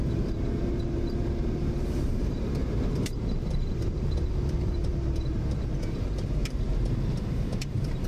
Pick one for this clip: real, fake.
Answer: fake